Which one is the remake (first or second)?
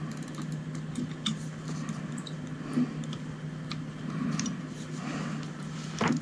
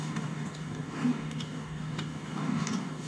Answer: second